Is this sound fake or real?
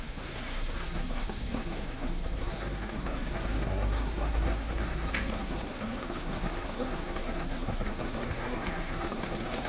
fake